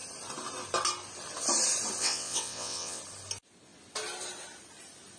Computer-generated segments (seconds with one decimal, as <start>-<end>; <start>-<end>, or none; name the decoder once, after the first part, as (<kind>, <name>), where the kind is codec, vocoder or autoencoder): 2.0-3.0 (vocoder, WaveNeXt)